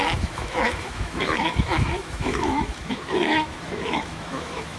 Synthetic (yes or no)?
yes